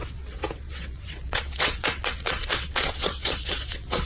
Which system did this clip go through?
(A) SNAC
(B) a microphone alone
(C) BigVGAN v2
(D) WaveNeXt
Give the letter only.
D